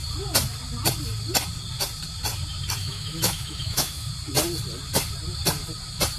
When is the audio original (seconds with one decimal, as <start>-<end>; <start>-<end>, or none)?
0.0-2.8; 4.1-6.2